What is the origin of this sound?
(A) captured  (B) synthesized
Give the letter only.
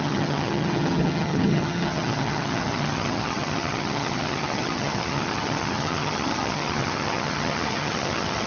B